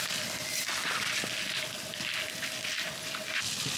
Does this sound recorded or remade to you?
recorded